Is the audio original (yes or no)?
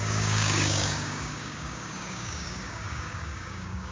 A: no